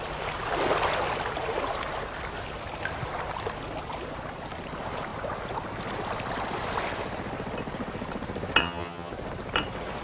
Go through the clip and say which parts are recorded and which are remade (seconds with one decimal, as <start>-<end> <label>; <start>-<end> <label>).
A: 0.0-8.6 recorded; 8.6-9.1 remade; 9.1-10.0 recorded